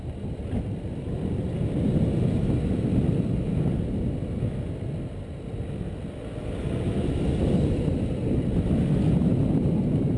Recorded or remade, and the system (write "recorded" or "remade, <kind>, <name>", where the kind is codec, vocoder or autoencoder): recorded